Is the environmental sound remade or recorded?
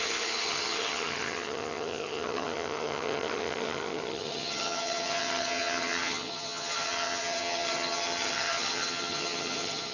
remade